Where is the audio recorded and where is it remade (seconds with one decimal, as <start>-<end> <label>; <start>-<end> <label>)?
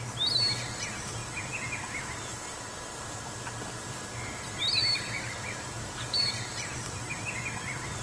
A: 0.0-4.8 recorded; 4.8-7.0 remade; 7.0-8.0 recorded